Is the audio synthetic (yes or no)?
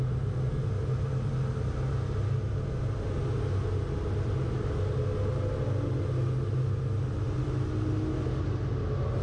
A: no